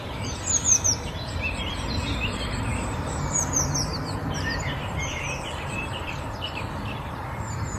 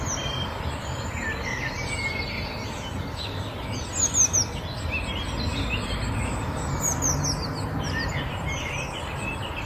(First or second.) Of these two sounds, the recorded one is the second